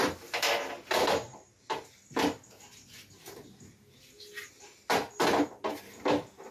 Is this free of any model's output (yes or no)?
yes